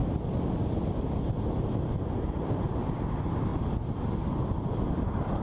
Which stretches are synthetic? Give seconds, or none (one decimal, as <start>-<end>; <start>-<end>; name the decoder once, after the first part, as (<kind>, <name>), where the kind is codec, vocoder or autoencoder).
2.2-3.5 (vocoder, BigVGAN v2); 4.2-5.4